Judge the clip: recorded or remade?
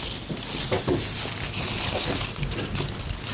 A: recorded